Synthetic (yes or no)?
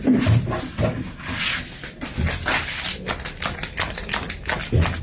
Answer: no